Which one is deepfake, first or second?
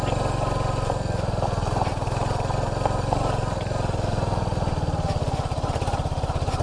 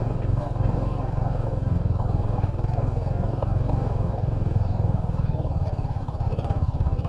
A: second